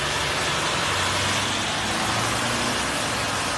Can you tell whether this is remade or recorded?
recorded